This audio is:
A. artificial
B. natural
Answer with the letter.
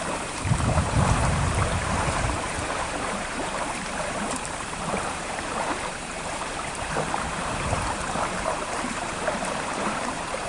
A